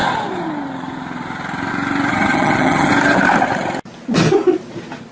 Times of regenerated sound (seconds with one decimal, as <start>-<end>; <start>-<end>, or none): 2.1-2.9